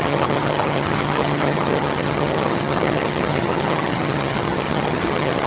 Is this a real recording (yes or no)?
no